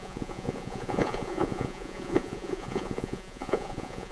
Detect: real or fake fake